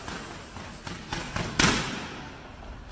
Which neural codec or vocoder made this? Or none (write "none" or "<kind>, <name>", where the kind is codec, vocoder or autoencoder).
none